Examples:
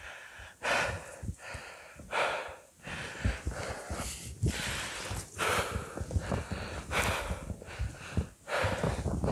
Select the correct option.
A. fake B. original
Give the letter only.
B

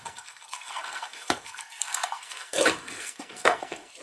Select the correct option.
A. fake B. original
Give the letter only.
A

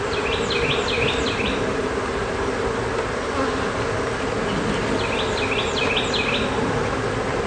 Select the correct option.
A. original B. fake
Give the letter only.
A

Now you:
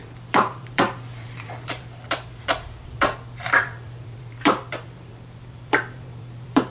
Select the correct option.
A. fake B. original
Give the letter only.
A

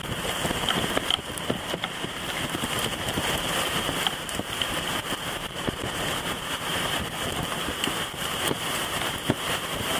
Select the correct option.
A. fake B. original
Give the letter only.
A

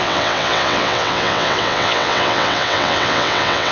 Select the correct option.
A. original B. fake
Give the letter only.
B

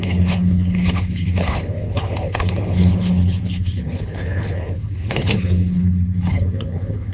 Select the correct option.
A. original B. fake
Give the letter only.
B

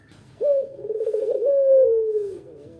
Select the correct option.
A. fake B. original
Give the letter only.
A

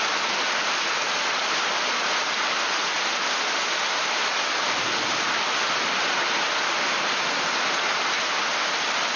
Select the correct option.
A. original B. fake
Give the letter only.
A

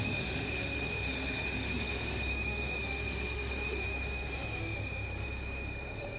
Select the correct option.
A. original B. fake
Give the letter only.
B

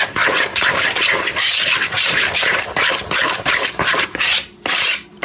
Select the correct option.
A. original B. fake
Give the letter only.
B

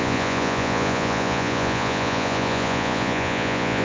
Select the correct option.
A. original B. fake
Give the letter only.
B